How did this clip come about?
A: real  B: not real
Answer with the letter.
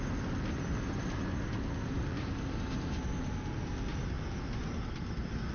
A